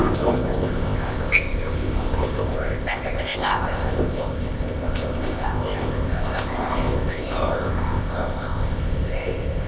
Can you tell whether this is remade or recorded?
remade